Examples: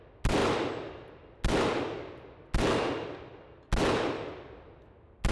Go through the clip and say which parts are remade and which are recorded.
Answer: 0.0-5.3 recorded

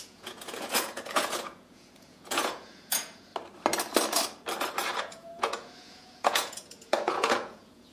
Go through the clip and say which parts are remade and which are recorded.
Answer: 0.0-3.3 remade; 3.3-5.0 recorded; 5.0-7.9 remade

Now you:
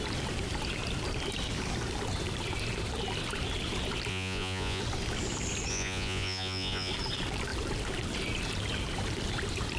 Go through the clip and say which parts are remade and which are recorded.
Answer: 0.0-4.1 recorded; 4.1-4.8 remade; 4.8-5.7 recorded; 5.7-6.9 remade; 6.9-9.8 recorded

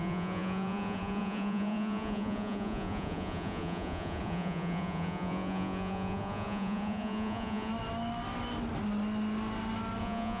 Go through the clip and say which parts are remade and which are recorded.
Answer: 0.0-7.7 remade; 7.7-10.0 recorded; 10.0-10.4 remade